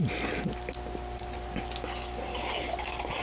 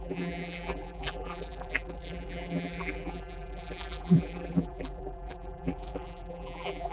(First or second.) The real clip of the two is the first